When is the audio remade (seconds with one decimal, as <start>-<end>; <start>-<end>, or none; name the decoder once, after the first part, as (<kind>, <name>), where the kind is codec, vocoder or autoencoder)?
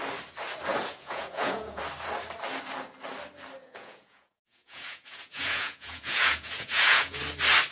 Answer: 0.7-1.8 (vocoder, Vocos); 3.6-7.2